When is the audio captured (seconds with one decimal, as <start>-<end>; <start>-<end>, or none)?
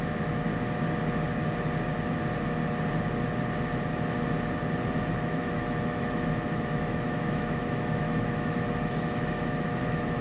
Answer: 0.5-5.1